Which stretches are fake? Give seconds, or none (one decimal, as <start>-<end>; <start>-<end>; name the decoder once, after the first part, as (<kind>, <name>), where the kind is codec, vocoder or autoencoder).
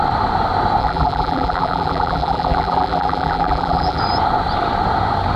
0.8-4.0 (vocoder, BigVGAN v2)